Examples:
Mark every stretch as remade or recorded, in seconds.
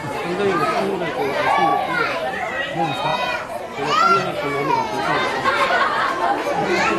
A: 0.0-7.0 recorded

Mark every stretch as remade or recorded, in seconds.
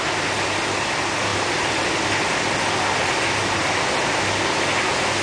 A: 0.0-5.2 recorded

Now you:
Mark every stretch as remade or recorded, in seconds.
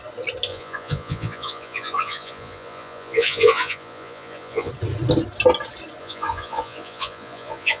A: 0.0-0.5 recorded; 0.5-4.7 remade; 4.7-6.0 recorded; 6.0-7.8 remade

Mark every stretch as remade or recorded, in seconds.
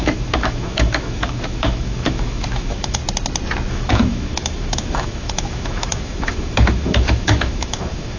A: 0.0-3.0 remade; 3.0-3.7 recorded; 3.7-8.2 remade